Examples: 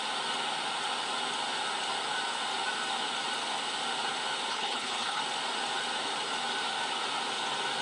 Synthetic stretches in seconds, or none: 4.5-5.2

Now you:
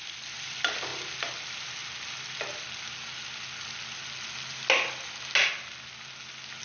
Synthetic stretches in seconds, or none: none

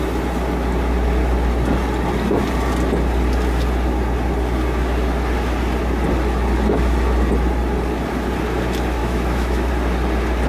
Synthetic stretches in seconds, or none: 9.0-9.7

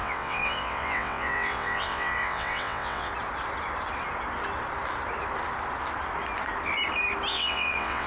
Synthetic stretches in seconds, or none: 0.0-3.1; 7.3-8.1

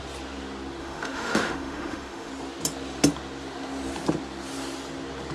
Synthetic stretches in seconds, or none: 0.8-2.3

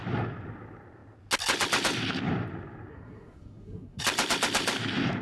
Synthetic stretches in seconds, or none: 2.9-4.0